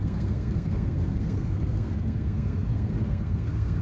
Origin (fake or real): fake